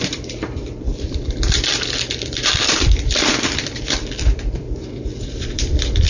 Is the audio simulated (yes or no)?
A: yes